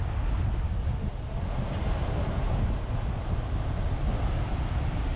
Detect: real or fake real